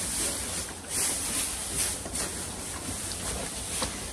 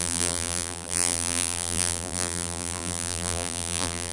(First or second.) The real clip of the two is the first